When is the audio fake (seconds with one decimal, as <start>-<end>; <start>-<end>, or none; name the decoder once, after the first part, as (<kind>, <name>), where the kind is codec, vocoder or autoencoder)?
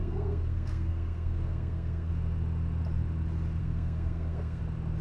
0.0-2.1 (codec, SNAC); 3.6-4.6